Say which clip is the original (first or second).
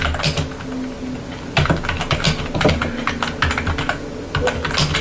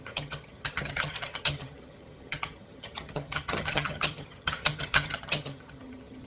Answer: first